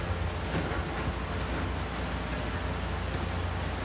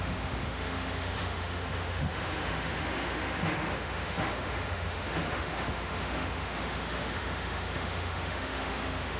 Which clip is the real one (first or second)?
first